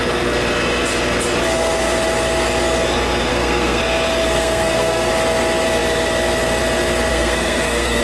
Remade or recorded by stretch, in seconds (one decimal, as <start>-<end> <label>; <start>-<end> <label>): 0.0-3.3 recorded; 3.3-3.8 remade; 3.8-4.2 recorded; 4.2-5.1 remade; 5.1-7.1 recorded; 7.1-8.0 remade